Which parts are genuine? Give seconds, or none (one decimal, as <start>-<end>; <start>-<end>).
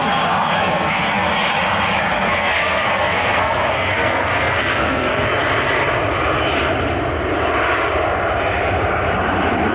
1.3-2.1; 5.3-9.7